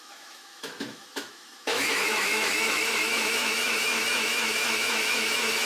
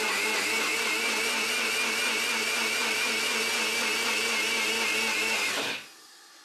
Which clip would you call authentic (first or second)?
second